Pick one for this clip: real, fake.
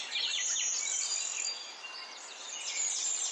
real